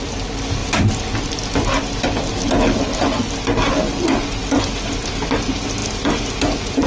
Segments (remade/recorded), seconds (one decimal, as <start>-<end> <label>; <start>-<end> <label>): 0.0-6.9 recorded